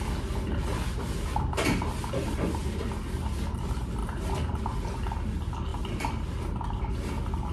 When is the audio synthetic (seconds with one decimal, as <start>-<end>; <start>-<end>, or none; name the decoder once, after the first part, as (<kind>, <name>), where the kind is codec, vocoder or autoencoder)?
none